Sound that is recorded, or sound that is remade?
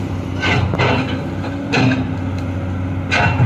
recorded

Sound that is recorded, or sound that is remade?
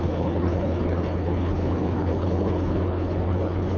remade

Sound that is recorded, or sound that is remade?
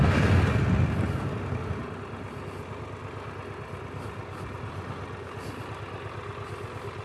recorded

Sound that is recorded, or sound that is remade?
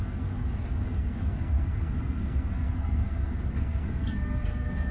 remade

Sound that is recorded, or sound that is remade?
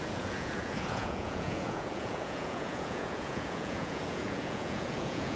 remade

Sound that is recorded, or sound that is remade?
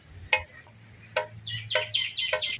recorded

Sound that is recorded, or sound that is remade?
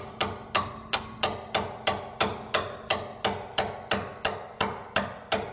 recorded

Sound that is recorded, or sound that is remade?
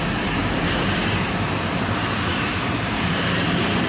remade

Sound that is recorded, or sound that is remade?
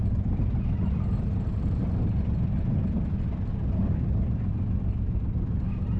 recorded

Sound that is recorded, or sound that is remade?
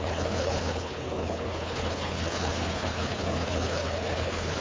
remade